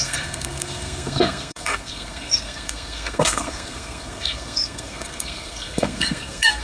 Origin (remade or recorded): remade